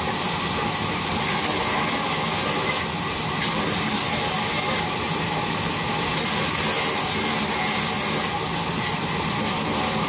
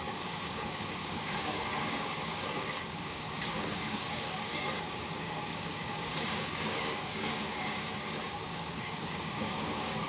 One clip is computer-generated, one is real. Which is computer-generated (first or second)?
second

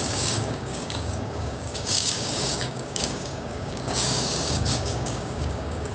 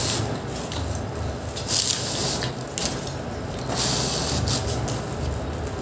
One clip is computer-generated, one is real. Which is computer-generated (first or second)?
first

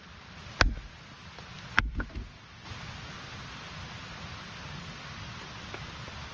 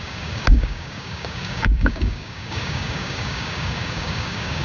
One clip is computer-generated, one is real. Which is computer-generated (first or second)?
second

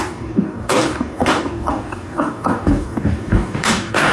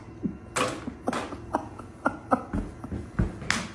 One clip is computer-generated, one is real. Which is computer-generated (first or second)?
first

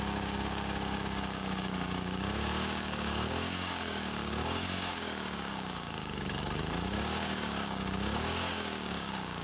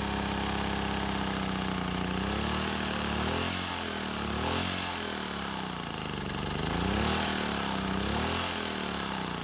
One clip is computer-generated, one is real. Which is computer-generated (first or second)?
first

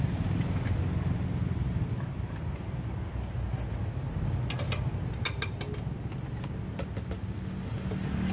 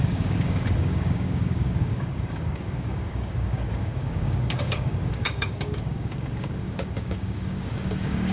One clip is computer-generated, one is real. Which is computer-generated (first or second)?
second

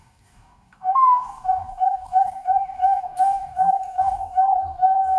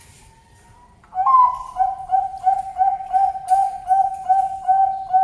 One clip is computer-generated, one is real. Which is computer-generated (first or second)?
first